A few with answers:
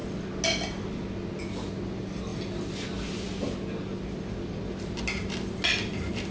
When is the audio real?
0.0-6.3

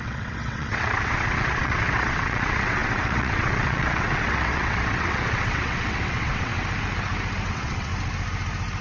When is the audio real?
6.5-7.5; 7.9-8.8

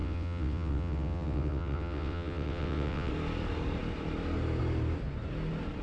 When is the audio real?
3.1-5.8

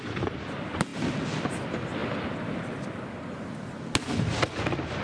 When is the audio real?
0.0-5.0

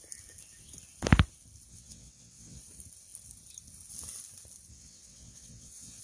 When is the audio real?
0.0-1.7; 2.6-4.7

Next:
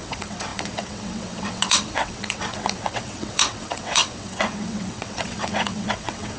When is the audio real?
none